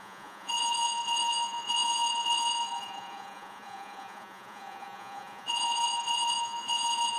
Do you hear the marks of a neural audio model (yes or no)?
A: yes